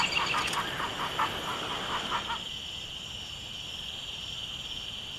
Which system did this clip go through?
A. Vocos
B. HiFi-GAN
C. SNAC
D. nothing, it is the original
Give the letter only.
D